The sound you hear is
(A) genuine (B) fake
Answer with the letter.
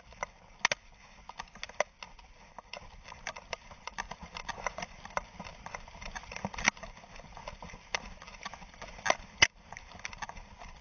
A